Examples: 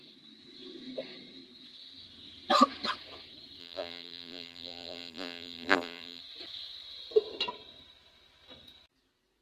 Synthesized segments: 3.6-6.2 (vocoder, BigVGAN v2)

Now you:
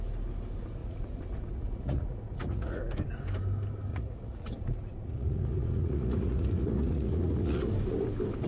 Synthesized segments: 0.8-2.8 (vocoder, Vocos); 3.9-7.7

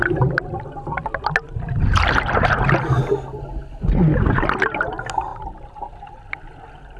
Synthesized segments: 5.3-6.3 (vocoder, BigVGAN v2)

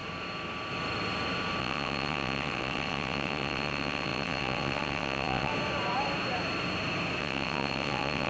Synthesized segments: 1.6-5.5 (vocoder, WaveNeXt); 7.2-8.3

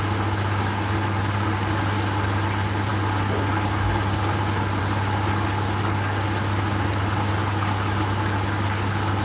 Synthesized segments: none

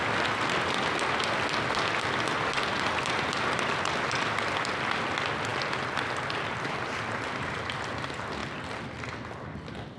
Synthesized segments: none